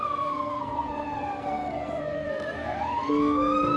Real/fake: fake